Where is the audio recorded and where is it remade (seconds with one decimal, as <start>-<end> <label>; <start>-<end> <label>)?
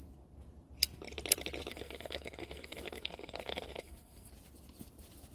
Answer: 0.0-1.7 recorded; 1.7-4.3 remade; 4.3-5.3 recorded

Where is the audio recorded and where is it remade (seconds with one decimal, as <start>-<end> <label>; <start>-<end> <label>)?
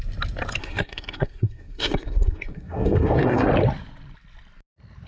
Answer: 0.0-0.6 recorded; 0.6-3.5 remade; 3.5-5.1 recorded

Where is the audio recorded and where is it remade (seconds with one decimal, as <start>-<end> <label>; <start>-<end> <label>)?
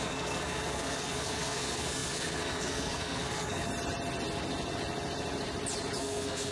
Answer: 0.0-3.7 remade; 3.7-6.0 recorded; 6.0-6.5 remade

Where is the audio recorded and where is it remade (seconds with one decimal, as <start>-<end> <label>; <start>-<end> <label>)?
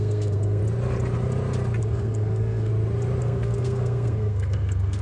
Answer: 0.0-0.6 remade; 0.6-1.8 recorded; 1.8-2.7 remade; 2.7-3.2 recorded; 3.2-5.0 remade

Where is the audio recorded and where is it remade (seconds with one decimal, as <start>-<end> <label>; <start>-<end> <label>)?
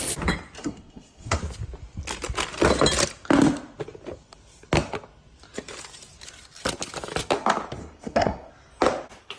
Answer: 0.0-0.6 recorded; 0.6-1.4 remade; 1.4-7.8 recorded; 7.8-8.5 remade; 8.5-9.4 recorded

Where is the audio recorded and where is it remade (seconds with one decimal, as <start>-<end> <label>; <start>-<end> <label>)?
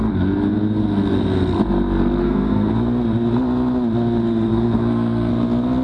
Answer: 0.0-2.2 recorded; 2.2-2.7 remade; 2.7-4.5 recorded; 4.5-5.3 remade; 5.3-5.8 recorded